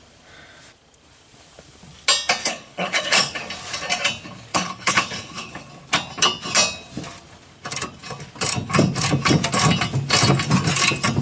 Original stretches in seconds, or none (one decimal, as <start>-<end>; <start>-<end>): 0.0-2.4; 3.4-4.5; 5.7-11.2